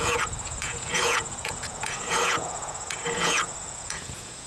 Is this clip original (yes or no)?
no